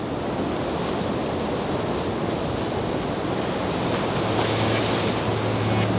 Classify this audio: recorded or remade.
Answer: recorded